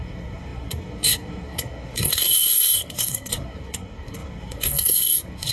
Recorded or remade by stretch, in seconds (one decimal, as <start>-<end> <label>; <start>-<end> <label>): 0.0-5.5 remade

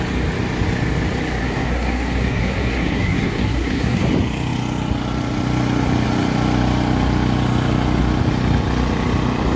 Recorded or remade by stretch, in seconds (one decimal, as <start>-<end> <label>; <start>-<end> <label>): 0.0-1.4 recorded; 1.4-4.0 remade; 4.0-9.6 recorded

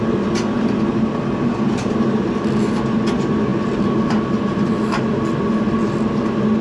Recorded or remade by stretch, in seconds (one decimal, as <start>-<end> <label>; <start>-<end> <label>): 0.0-6.6 recorded

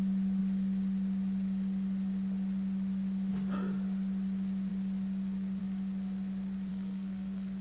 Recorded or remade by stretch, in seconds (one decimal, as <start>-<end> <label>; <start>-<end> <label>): 0.0-6.7 recorded; 6.7-7.6 remade

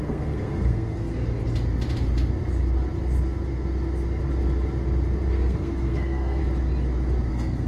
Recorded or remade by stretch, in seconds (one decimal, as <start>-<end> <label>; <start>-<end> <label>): 0.0-1.2 remade; 1.2-5.3 recorded; 5.3-6.4 remade; 6.4-7.3 recorded; 7.3-7.7 remade